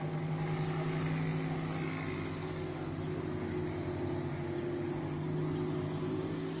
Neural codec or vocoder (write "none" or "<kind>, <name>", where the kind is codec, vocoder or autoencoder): none